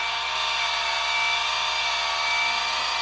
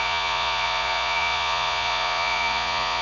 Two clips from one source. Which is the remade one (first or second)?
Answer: second